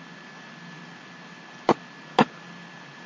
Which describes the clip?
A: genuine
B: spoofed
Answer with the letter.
A